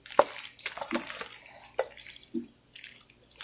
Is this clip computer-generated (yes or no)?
no